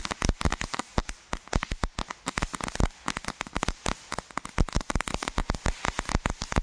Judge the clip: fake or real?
real